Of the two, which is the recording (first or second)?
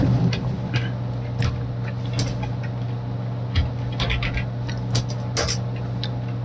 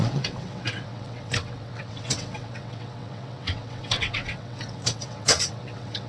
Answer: first